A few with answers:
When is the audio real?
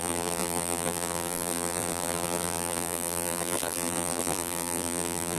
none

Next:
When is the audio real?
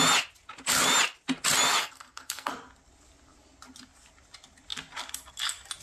0.0-1.8; 2.5-5.8